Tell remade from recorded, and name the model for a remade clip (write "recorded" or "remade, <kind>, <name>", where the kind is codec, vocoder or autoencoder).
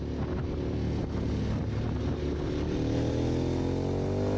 recorded